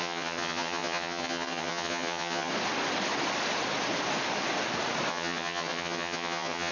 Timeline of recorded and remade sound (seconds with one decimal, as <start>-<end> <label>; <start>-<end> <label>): 0.0-2.5 remade; 2.5-5.1 recorded; 5.1-6.7 remade